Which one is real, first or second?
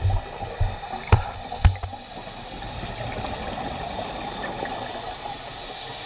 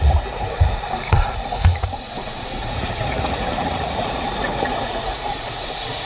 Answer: first